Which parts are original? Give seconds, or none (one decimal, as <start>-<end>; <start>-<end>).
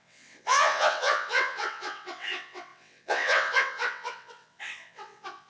none